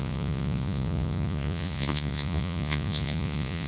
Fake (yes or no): yes